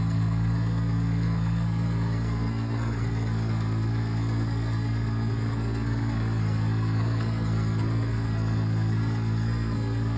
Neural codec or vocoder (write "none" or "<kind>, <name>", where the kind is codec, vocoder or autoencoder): codec, SNAC